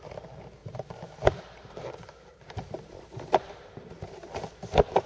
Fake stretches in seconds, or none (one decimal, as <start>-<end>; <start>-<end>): 0.6-3.7